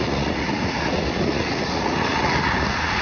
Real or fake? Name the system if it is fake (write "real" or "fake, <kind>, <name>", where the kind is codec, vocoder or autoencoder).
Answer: fake, vocoder, Vocos